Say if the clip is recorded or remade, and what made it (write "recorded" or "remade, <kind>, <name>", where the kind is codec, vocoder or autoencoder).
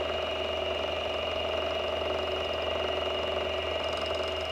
remade, vocoder, BigVGAN v2